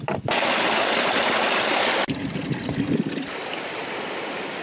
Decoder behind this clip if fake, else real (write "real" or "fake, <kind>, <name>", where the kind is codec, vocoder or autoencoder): fake, vocoder, BigVGAN v2